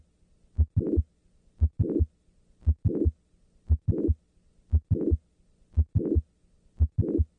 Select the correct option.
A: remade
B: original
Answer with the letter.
B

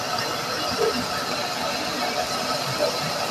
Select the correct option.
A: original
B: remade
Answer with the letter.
A